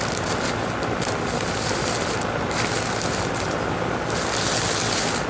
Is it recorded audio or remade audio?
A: recorded